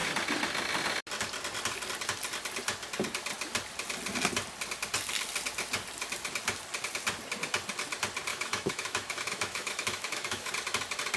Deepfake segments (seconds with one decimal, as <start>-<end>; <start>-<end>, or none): 8.3-10.5